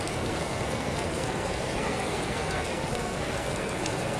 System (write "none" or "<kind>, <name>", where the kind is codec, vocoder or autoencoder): codec, SNAC